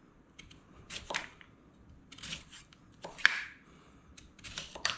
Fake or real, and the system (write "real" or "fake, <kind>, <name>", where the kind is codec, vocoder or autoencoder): fake, vocoder, BigVGAN v2